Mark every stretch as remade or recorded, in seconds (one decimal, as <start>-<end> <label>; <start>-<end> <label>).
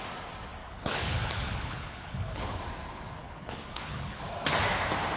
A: 0.0-0.6 recorded; 0.6-2.6 remade; 2.6-3.2 recorded; 3.2-4.2 remade; 4.2-5.2 recorded